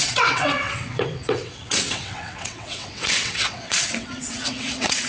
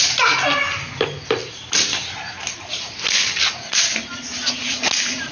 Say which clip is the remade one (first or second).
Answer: first